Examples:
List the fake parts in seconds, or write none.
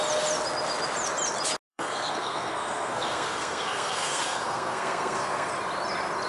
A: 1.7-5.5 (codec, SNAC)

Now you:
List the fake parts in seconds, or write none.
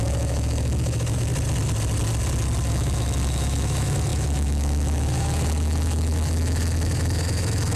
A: 0.0-1.3 (autoencoder, DAC-VAE); 2.7-7.8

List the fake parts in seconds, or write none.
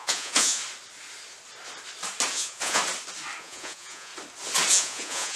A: 0.0-0.6 (vocoder, Vocos); 2.3-2.8; 3.4-4.1; 4.7-5.4